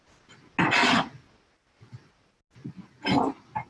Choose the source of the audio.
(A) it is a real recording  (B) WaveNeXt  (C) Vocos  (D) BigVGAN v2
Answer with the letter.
A